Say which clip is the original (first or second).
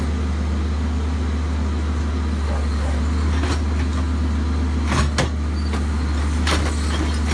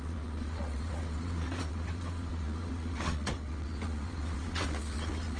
first